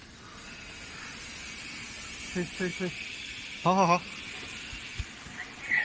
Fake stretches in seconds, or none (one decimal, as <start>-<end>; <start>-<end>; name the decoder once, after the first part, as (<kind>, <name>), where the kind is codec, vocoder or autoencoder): none